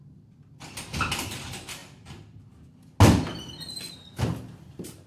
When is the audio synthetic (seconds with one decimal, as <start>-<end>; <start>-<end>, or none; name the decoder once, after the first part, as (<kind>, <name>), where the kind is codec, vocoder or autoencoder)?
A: none

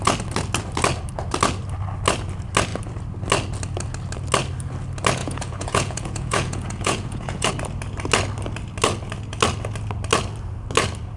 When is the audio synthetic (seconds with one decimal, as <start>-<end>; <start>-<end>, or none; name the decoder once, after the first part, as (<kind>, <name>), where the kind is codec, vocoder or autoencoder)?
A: 5.2-7.5 (vocoder, Vocos)

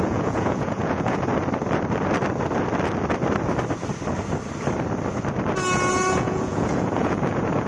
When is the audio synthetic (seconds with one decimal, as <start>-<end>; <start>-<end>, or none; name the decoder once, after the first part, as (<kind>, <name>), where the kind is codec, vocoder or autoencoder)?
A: 0.0-1.3 (vocoder, Vocos); 5.9-7.7

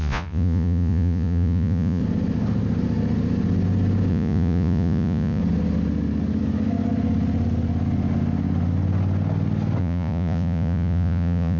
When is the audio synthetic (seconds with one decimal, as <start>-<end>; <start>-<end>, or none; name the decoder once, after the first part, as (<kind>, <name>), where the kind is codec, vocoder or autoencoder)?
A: 0.0-2.0 (vocoder, Vocos); 4.1-5.4; 9.8-11.6

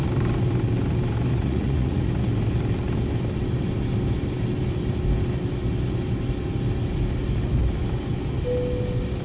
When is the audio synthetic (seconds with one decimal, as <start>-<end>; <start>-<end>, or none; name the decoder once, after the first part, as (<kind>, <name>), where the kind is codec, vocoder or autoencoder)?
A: 1.3-2.1 (vocoder, Vocos)

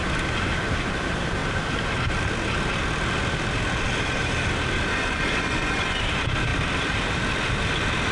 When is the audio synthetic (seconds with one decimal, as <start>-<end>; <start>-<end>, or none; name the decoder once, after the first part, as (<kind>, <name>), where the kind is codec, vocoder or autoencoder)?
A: 4.9-6.0 (vocoder, Vocos)